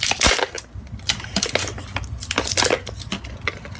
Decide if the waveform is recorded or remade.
recorded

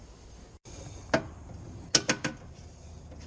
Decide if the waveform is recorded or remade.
recorded